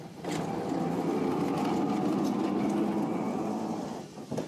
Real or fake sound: real